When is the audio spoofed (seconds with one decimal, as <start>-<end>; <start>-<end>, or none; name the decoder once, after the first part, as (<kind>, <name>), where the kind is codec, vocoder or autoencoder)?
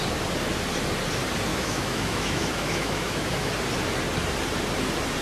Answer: 1.5-3.5 (autoencoder, DAC-VAE)